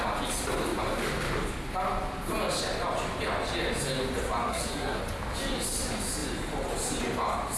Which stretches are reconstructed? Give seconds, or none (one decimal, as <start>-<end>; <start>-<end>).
4.5-5.0